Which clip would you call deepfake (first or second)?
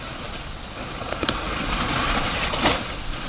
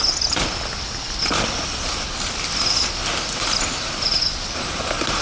first